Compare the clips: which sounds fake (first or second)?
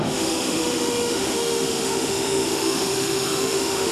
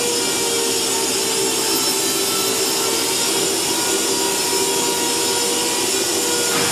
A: first